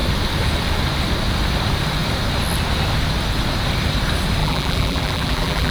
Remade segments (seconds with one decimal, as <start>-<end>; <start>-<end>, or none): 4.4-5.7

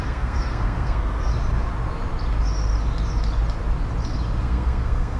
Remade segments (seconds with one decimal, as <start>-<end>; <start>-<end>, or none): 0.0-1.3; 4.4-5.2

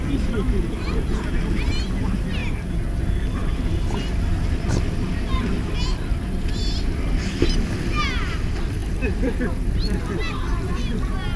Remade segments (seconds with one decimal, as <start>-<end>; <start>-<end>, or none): none

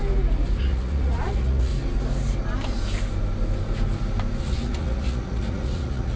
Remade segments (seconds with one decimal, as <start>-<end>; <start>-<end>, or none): 0.6-1.7; 4.4-6.2

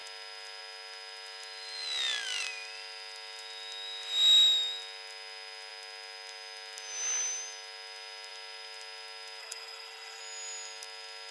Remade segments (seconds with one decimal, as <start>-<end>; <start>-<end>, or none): 9.4-10.2

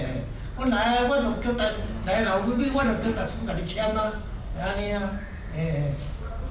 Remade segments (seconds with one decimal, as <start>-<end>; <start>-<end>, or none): 1.3-5.2